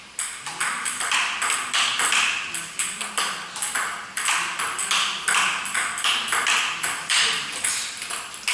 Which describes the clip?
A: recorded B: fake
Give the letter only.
A